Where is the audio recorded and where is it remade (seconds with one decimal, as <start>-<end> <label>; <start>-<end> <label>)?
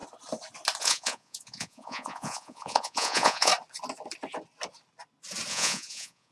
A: 0.0-0.8 recorded; 0.8-3.5 remade; 3.5-5.5 recorded; 5.5-6.3 remade